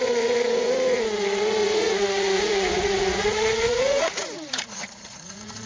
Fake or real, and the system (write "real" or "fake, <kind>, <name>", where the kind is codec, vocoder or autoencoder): fake, vocoder, Vocos